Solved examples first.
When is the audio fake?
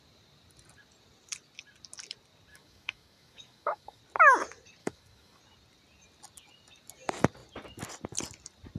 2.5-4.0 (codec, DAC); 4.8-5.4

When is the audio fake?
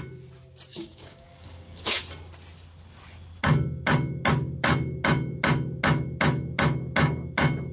0.7-2.0 (codec, DAC)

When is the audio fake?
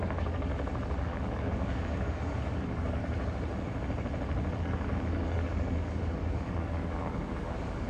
0.0-0.5 (codec, DAC); 1.0-3.0; 4.6-7.9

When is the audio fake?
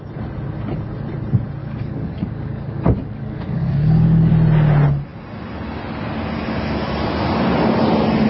1.6-4.3 (codec, DAC)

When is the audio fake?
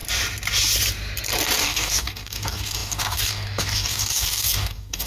1.6-5.1 (codec, DAC)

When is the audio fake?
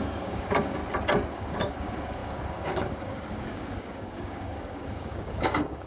0.0-0.8 (codec, DAC); 1.3-5.9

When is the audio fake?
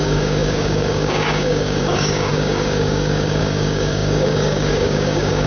0.0-5.5 (codec, DAC)